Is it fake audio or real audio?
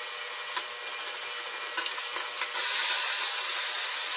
real